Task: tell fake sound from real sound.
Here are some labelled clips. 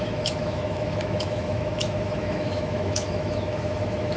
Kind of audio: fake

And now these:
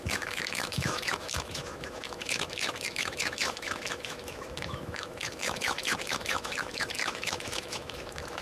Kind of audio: fake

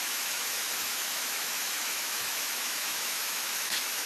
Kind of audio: fake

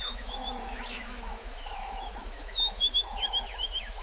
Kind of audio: fake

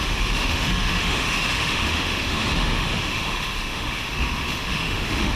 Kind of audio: fake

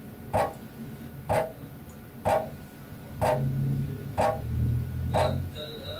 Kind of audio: real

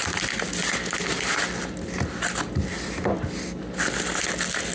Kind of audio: real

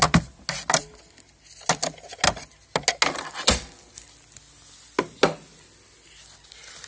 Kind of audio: real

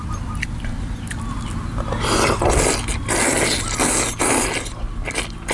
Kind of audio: real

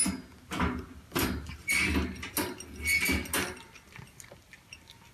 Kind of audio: real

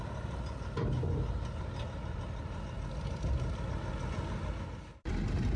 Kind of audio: real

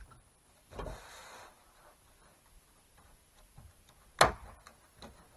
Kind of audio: real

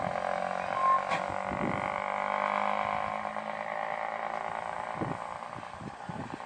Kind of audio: real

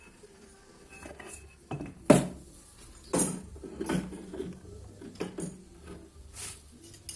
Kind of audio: real